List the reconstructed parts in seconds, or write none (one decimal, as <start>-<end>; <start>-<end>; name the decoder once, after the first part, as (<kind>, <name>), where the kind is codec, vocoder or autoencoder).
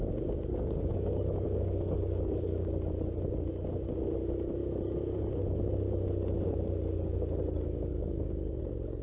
0.5-2.7 (codec, DAC); 7.9-8.6